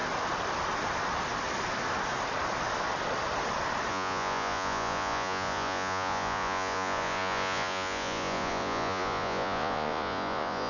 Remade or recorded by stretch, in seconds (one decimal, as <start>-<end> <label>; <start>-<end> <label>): 0.0-3.9 recorded; 3.9-10.7 remade

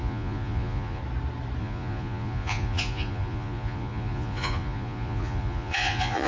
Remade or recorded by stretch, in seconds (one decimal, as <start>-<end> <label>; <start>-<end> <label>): 0.0-1.0 remade; 1.0-1.6 recorded; 1.6-6.3 remade

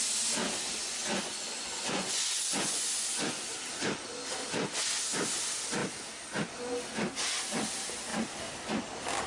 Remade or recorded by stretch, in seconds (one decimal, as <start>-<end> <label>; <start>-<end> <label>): 0.0-0.8 recorded; 0.8-3.5 remade; 3.5-9.3 recorded

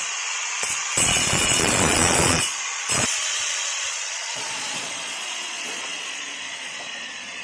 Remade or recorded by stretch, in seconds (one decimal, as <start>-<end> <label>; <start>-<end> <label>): 0.0-7.4 remade

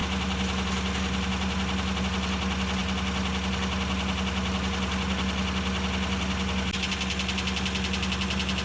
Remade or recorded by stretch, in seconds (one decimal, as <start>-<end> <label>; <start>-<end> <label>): 0.0-8.6 recorded